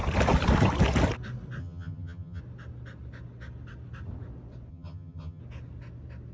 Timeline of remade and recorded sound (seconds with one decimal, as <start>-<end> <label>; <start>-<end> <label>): 0.0-1.6 recorded; 1.6-2.4 remade; 2.4-4.7 recorded; 4.7-5.4 remade; 5.4-6.3 recorded